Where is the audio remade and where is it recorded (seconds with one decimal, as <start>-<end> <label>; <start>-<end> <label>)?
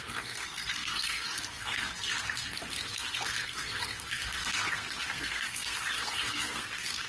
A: 0.0-7.1 remade